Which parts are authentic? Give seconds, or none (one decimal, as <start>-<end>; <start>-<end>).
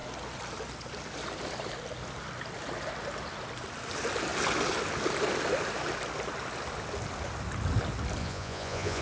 0.0-8.2